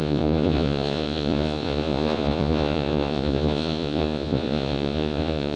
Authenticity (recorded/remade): remade